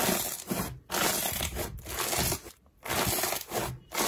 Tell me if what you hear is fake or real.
real